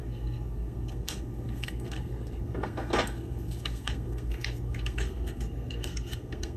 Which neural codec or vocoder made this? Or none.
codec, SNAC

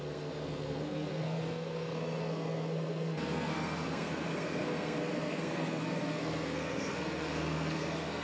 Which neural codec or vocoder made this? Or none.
codec, SNAC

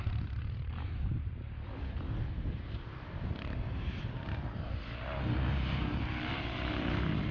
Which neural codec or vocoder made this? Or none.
vocoder, BigVGAN v2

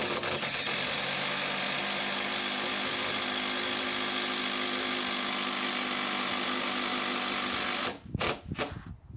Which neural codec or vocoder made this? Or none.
none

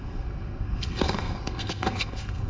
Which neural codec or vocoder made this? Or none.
codec, SNAC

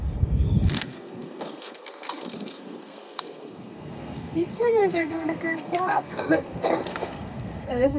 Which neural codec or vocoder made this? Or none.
codec, SNAC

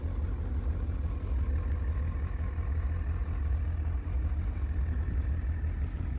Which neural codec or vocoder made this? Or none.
none